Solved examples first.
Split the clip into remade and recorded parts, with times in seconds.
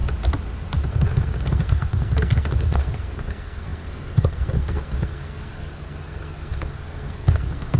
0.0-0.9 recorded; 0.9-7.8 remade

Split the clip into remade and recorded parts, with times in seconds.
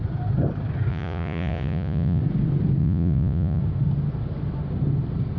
0.0-0.9 recorded; 0.9-2.2 remade; 2.2-2.8 recorded; 2.8-3.6 remade; 3.6-5.4 recorded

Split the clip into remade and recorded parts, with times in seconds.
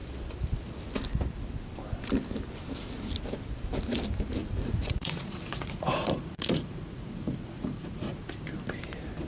0.0-4.4 recorded; 4.4-8.4 remade; 8.4-9.3 recorded